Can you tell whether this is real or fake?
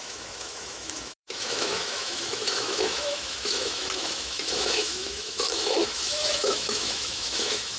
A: fake